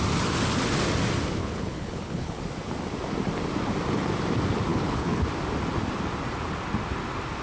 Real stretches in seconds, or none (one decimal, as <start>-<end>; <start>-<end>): 0.0-1.4; 2.4-4.7; 5.2-7.4